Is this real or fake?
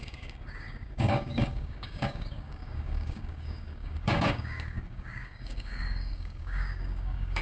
fake